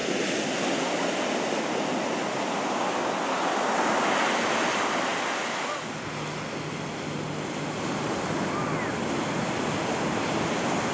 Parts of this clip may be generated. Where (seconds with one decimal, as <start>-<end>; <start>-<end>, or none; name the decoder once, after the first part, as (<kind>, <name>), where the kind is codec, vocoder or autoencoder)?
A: none